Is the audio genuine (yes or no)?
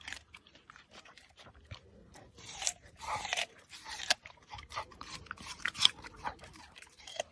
no